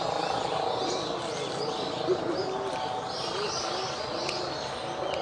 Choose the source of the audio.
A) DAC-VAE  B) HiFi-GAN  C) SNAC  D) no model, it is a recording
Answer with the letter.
D